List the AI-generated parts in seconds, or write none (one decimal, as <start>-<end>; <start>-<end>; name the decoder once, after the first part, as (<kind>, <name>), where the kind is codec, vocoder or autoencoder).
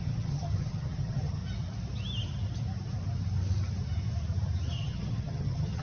0.0-1.4 (vocoder, HiFi-GAN); 4.7-5.8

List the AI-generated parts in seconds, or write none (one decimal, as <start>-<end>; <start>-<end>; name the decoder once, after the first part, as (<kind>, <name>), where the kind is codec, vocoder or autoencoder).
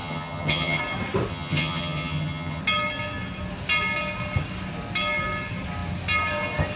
0.0-0.8 (vocoder, HiFi-GAN); 1.3-2.6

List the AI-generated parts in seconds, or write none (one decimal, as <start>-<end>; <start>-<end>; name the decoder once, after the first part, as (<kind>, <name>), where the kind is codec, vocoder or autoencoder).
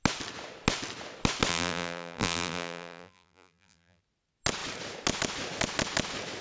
1.5-4.0 (vocoder, BigVGAN v2)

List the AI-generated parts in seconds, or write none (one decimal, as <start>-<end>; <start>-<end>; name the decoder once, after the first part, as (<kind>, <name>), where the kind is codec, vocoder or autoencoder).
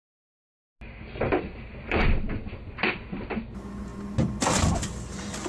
1.5-3.3 (vocoder, BigVGAN v2)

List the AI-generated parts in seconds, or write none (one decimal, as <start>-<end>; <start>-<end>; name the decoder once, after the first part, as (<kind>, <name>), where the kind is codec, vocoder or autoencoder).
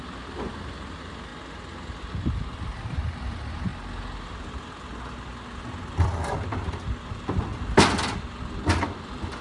0.0-1.3 (vocoder, BigVGAN v2); 2.0-3.7; 6.4-7.5; 8.7-9.4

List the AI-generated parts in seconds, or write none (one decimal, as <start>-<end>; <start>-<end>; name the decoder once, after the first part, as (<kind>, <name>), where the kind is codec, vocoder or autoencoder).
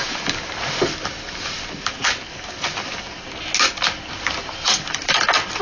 1.0-2.2 (vocoder, BigVGAN v2); 4.5-5.6